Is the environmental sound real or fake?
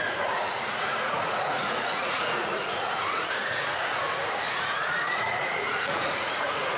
fake